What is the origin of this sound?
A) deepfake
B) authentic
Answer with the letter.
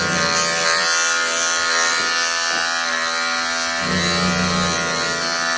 B